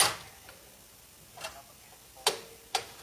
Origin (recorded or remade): recorded